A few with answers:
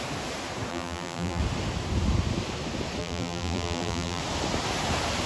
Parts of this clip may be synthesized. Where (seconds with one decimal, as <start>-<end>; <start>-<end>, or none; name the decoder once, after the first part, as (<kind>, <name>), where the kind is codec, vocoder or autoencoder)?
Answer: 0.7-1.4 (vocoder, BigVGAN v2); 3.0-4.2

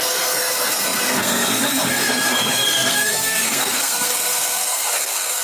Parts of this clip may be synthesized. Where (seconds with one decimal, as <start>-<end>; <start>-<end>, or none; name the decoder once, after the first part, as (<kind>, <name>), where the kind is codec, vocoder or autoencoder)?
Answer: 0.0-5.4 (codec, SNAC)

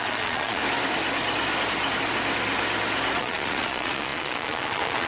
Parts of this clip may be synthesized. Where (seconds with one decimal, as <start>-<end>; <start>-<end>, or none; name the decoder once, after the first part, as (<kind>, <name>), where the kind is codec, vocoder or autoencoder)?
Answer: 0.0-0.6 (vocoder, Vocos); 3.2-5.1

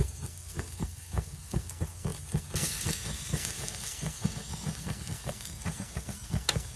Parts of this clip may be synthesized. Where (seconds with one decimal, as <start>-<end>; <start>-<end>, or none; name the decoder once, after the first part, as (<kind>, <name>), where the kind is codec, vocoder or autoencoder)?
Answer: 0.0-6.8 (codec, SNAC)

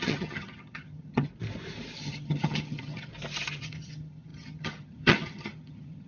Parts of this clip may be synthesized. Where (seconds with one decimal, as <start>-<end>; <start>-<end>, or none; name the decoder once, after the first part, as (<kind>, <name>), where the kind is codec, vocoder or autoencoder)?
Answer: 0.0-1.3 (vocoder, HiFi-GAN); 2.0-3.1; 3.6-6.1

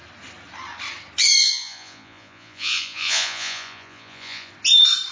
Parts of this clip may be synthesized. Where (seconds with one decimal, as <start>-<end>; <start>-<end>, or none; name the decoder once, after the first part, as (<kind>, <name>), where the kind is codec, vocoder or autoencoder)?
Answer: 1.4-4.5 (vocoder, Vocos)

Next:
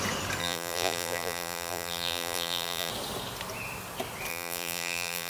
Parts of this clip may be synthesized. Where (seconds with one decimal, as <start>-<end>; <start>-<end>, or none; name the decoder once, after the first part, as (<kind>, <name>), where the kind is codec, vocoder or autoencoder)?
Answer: 0.4-2.9 (vocoder, BigVGAN v2); 4.3-5.3